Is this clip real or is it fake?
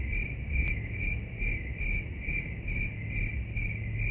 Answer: real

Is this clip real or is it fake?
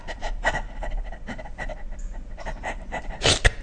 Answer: real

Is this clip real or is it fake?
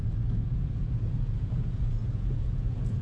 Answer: fake